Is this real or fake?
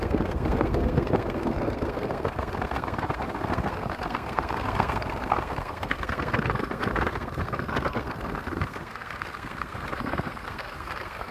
fake